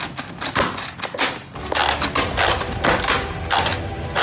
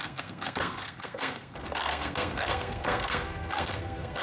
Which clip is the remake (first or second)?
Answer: second